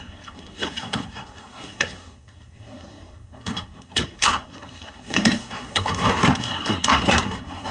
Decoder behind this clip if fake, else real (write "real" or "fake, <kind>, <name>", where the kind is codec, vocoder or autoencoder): fake, codec, SNAC